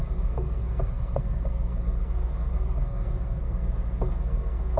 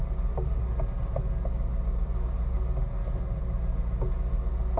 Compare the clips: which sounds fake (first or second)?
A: first